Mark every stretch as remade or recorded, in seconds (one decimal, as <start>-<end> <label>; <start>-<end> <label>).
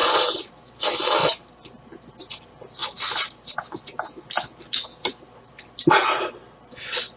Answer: 0.0-0.5 remade; 0.5-7.2 recorded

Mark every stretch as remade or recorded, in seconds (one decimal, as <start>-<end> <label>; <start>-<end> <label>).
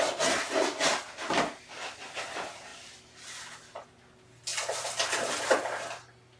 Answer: 0.0-6.4 recorded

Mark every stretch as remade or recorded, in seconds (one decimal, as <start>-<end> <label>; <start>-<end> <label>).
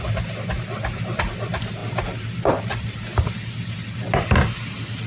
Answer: 0.0-5.1 recorded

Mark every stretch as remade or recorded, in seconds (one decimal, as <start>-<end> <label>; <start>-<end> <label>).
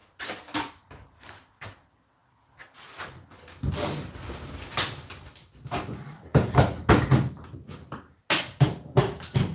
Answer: 0.0-1.5 remade; 1.5-9.5 recorded